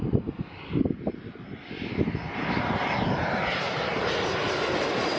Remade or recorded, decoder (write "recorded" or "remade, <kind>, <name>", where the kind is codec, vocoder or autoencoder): recorded